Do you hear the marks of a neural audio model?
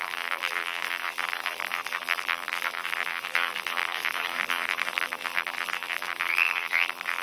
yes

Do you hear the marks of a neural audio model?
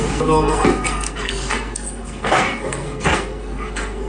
yes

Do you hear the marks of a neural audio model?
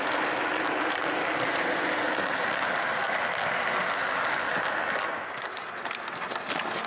no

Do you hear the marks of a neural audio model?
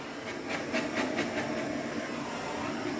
no